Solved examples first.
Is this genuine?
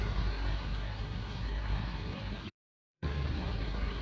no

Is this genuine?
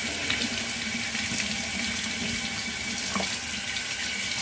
yes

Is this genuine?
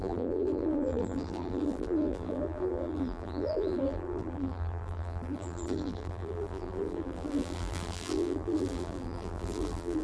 no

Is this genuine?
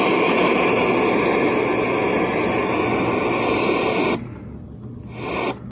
yes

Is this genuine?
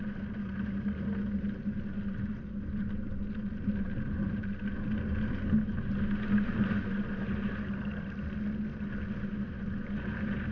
yes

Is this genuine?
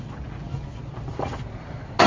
yes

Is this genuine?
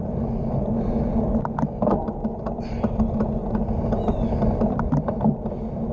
yes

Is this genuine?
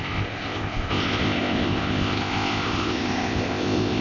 no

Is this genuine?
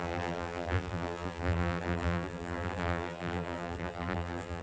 no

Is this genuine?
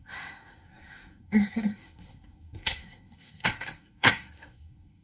no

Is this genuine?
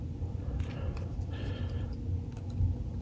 yes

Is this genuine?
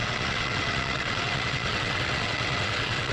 no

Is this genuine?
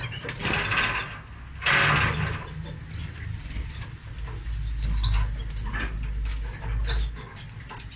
yes